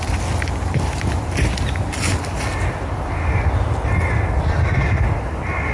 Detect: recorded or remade recorded